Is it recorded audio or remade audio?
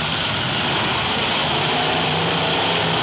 remade